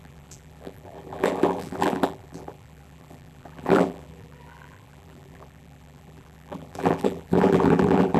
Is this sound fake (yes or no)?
yes